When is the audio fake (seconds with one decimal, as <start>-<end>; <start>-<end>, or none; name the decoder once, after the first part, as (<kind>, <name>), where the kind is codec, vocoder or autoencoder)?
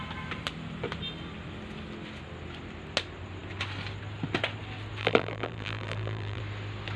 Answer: 5.0-6.4 (vocoder, BigVGAN v2)